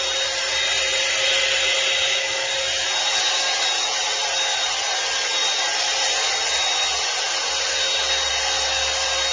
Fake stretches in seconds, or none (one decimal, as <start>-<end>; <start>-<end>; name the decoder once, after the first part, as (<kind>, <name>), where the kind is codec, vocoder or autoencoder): 2.0-2.5 (codec, DAC)